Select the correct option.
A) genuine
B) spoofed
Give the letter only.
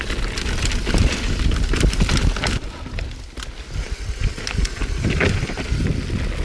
A